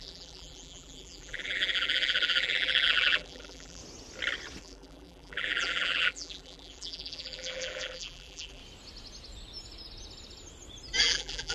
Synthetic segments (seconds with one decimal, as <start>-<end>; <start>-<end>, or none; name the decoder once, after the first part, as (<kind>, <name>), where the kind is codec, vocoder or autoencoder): 0.0-3.8 (vocoder, BigVGAN v2); 4.6-8.6; 11.0-11.5